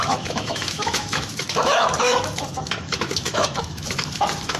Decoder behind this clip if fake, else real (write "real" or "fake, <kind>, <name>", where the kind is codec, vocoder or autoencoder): fake, autoencoder, DAC-VAE